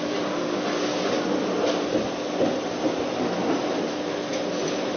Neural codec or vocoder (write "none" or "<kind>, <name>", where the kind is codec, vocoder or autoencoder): none